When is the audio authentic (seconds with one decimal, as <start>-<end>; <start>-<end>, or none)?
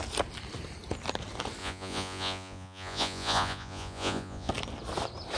0.0-1.6; 4.5-5.4